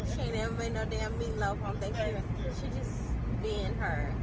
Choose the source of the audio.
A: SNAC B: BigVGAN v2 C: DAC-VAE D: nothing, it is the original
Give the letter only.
D